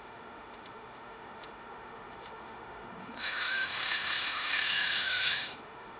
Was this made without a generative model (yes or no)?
no